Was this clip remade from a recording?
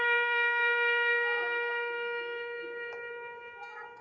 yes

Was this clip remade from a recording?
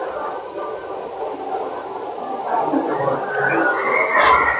no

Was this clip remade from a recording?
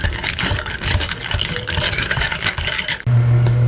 yes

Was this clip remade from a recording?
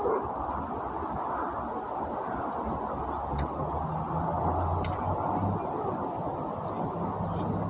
no